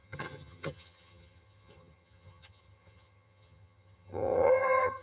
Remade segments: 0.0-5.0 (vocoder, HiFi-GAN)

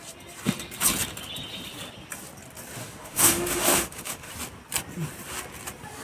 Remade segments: 2.8-4.3 (autoencoder, DAC-VAE)

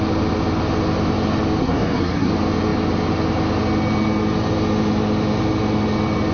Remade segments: 1.6-2.3 (codec, SNAC)

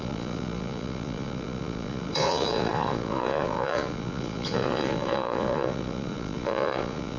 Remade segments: 0.0-7.2 (vocoder, Vocos)

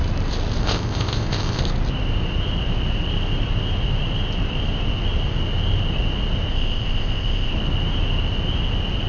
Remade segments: 0.6-1.6 (codec, ZipCodec); 6.5-7.5

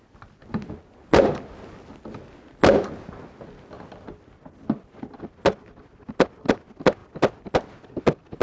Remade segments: none